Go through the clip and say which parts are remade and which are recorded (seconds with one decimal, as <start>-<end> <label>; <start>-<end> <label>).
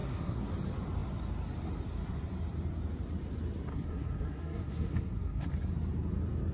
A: 0.0-0.5 remade; 0.5-3.7 recorded; 3.7-5.5 remade; 5.5-6.5 recorded